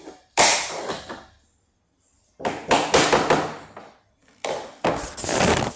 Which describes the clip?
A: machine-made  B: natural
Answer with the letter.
B